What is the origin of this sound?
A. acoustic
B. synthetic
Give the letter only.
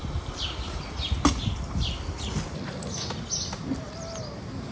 A